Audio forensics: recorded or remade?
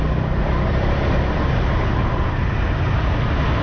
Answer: recorded